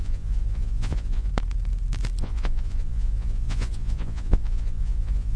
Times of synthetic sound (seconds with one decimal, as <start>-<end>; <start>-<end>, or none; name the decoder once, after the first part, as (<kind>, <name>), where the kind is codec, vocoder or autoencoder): 0.0-1.3 (vocoder, Vocos); 2.2-5.4